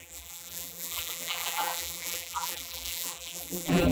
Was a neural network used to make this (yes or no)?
yes